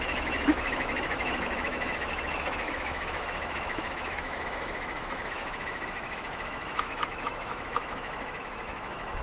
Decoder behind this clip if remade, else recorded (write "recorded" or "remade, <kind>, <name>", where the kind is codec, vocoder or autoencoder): remade, autoencoder, DAC-VAE